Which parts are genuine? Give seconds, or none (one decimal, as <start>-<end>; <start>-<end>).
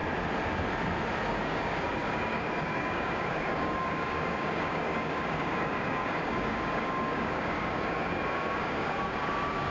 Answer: 0.0-1.3